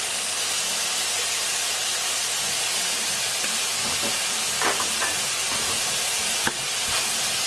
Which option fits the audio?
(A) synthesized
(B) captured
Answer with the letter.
B